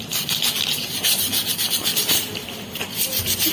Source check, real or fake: real